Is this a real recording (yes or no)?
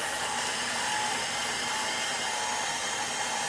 yes